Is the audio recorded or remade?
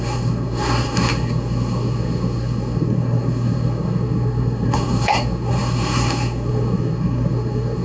remade